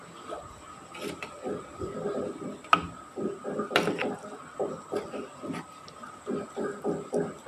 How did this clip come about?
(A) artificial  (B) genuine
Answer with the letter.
B